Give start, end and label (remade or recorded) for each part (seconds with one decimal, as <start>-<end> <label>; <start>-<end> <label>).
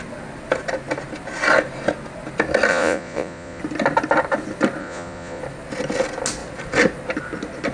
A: 0.0-2.7 recorded; 2.7-3.6 remade; 3.6-4.8 recorded; 4.8-5.4 remade; 5.4-7.7 recorded